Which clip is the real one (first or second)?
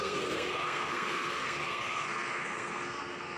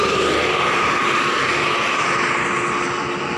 second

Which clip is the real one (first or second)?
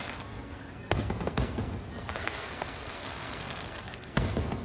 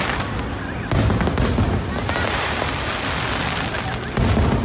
second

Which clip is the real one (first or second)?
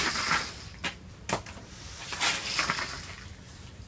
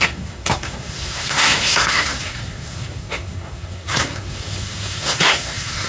first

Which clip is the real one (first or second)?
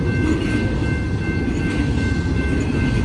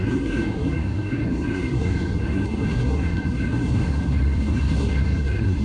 first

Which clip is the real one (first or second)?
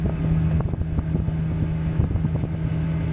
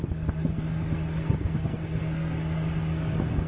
first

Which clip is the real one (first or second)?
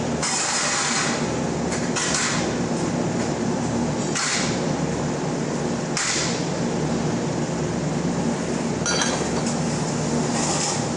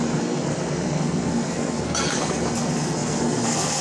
first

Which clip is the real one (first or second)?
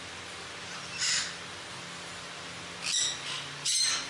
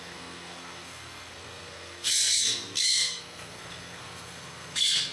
first